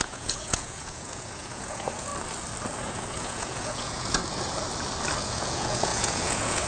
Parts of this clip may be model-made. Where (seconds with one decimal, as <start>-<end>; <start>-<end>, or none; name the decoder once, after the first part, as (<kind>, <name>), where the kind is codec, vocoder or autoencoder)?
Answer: 0.0-2.1 (vocoder, Vocos); 2.9-4.2; 5.2-6.7